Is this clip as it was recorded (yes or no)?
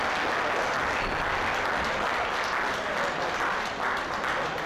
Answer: yes